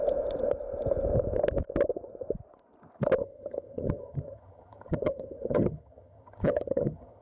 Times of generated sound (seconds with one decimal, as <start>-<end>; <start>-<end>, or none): 3.2-7.2